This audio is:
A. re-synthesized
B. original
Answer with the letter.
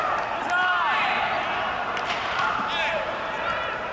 A